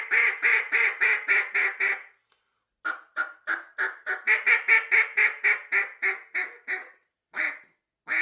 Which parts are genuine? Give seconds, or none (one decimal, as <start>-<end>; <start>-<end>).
0.0-6.8; 7.6-8.2